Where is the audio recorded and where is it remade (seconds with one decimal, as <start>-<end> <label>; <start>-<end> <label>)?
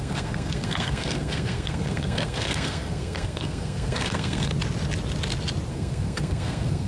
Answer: 0.0-4.5 remade; 4.5-5.7 recorded; 5.7-6.9 remade